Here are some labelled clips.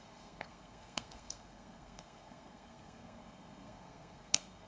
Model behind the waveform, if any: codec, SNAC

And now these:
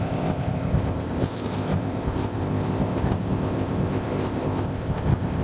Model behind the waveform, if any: codec, ZipCodec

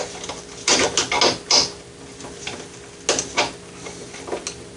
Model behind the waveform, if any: none